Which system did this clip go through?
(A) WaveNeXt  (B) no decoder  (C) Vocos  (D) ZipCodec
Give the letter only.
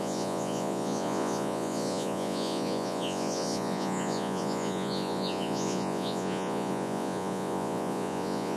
C